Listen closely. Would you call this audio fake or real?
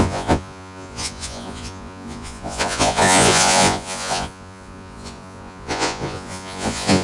fake